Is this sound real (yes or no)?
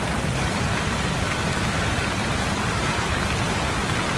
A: yes